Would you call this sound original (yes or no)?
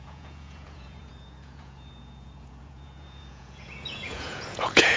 no